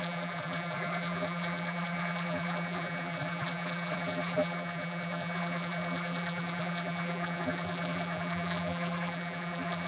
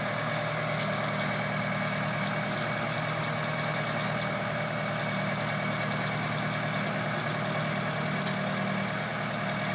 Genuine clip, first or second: second